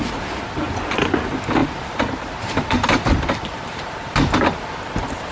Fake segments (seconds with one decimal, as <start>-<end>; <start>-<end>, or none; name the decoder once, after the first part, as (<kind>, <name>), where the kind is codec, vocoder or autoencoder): 1.6-3.1 (vocoder, BigVGAN v2); 3.5-4.1